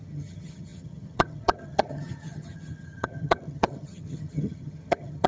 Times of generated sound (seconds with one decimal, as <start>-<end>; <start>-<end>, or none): 0.0-5.3